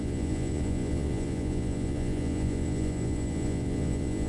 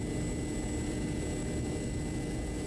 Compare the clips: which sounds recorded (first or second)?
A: second